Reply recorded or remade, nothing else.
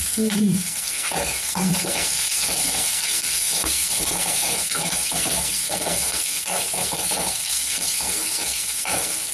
remade